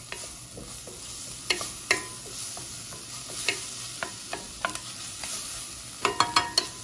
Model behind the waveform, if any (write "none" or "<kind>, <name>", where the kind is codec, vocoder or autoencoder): none